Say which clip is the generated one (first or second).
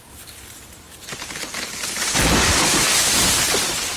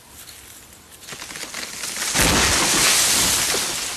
first